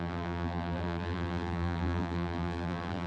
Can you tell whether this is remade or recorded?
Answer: remade